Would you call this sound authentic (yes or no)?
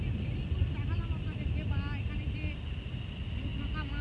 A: yes